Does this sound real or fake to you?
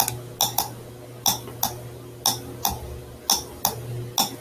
real